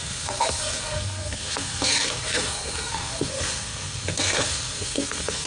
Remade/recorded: remade